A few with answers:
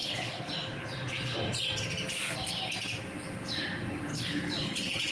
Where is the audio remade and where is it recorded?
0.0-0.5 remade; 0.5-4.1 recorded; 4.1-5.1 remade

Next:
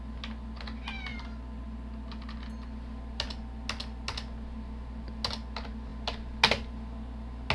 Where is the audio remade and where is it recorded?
0.0-7.5 recorded

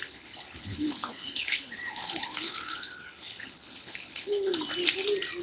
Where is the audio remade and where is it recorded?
0.0-4.5 remade; 4.5-5.4 recorded

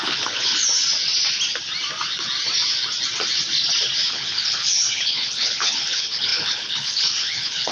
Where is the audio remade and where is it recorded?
0.0-0.6 remade; 0.6-4.1 recorded; 4.1-7.7 remade

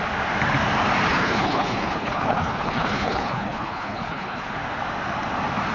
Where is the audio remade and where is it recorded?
0.0-1.1 recorded; 1.1-4.5 remade; 4.5-5.7 recorded